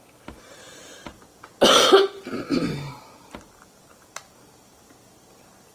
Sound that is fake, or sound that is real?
real